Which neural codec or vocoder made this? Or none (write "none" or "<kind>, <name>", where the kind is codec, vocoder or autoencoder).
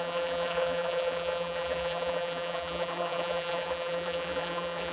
vocoder, BigVGAN v2